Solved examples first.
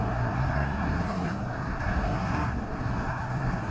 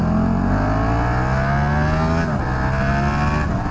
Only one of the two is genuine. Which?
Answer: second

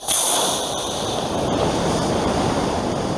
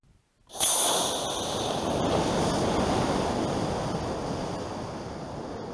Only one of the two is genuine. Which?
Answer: second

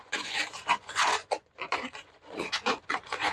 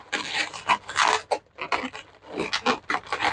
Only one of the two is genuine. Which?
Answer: second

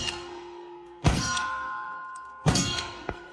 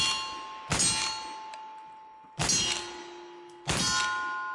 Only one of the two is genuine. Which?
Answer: second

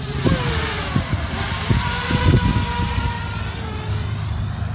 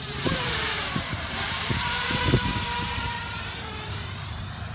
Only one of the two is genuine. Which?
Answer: first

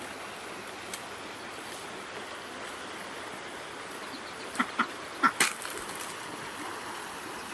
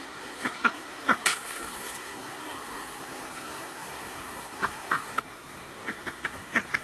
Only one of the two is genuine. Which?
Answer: first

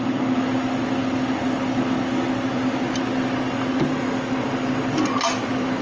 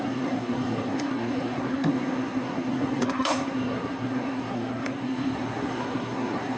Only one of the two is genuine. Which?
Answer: first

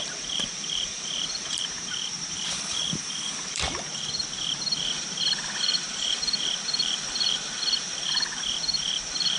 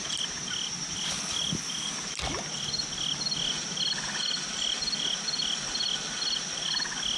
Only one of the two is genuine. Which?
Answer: second